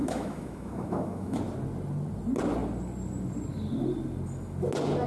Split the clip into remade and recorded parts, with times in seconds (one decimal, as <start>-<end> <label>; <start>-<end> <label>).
0.0-1.4 remade; 1.4-5.1 recorded